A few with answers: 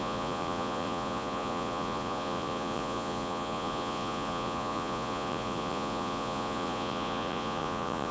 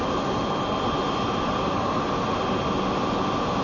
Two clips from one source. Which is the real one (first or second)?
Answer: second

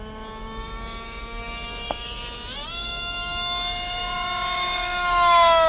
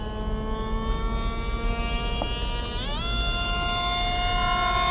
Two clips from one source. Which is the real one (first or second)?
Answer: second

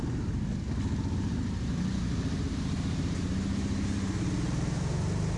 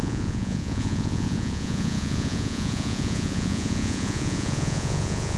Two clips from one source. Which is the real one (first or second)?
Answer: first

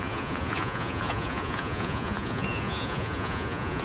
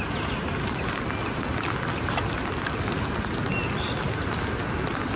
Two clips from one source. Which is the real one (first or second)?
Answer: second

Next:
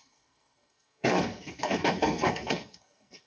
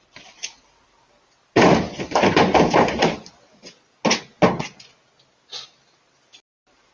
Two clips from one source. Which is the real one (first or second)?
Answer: second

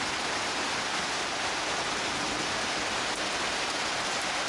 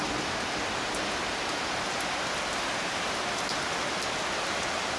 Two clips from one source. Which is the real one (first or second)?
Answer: second